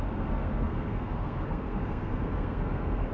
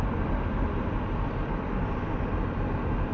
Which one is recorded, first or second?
second